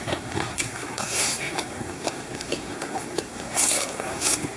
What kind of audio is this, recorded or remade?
remade